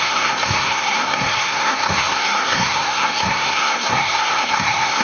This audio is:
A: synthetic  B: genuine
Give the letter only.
A